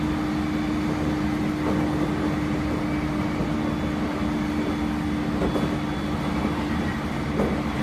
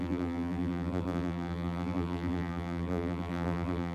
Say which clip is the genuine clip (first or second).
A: first